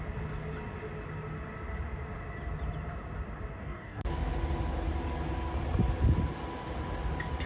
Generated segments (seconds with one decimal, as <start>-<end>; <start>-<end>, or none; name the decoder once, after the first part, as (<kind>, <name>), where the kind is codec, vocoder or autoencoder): 3.6-4.1 (codec, DAC)